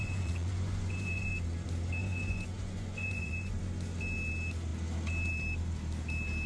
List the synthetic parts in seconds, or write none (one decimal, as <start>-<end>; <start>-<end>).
0.0-1.3; 2.0-3.6